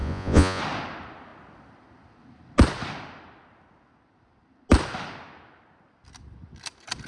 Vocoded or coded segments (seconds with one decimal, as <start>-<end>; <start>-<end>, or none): 0.0-0.6